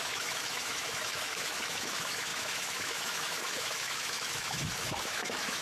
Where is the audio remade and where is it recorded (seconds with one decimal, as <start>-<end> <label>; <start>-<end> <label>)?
0.0-5.6 remade